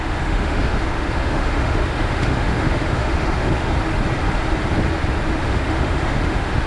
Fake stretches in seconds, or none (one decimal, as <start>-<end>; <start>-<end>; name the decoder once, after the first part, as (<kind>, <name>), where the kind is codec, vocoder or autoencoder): 0.0-3.7 (autoencoder, DAC-VAE); 5.4-6.7